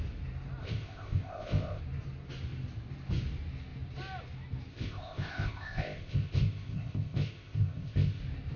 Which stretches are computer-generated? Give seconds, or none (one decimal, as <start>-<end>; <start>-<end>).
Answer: 0.6-1.8; 4.7-8.2